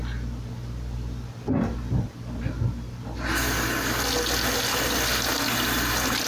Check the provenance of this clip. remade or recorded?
recorded